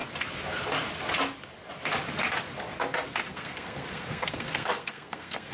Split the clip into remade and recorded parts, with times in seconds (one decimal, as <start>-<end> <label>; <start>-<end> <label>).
0.0-3.3 recorded; 3.3-5.5 remade